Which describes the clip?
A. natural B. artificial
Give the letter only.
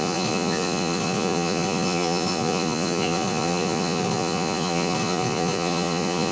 B